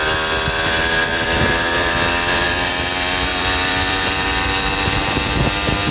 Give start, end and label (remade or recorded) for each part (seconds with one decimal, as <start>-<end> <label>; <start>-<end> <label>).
0.0-1.1 recorded; 1.1-2.7 remade; 2.7-3.3 recorded; 3.3-5.0 remade; 5.0-5.9 recorded